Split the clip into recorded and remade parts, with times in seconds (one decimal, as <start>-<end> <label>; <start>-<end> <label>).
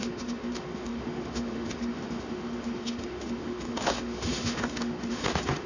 0.0-5.7 remade